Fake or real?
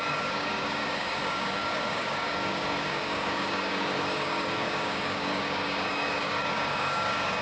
fake